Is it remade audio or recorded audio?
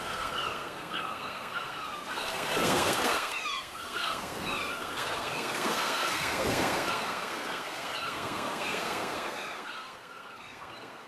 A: remade